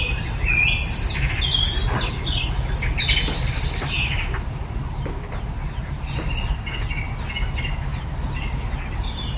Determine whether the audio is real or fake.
real